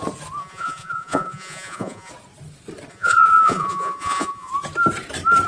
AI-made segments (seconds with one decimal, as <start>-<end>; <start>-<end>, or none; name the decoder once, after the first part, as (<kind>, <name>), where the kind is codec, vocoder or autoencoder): 0.4-2.1 (vocoder, Vocos); 2.9-4.5